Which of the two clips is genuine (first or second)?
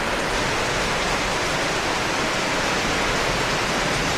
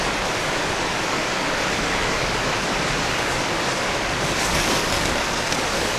first